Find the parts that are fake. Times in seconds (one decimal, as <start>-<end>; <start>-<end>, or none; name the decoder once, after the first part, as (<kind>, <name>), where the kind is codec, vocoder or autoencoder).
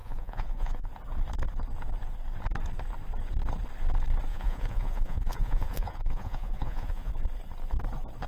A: 0.0-0.9 (vocoder, Vocos); 4.3-7.1